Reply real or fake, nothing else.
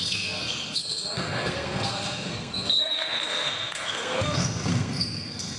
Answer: fake